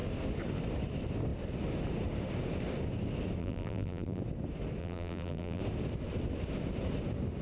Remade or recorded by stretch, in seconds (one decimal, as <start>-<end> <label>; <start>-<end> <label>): 0.0-3.4 recorded; 3.4-4.2 remade; 4.2-4.8 recorded; 4.8-5.6 remade; 5.6-7.4 recorded